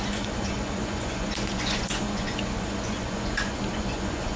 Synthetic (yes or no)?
yes